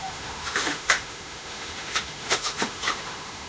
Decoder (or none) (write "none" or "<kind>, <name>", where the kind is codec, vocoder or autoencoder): autoencoder, DAC-VAE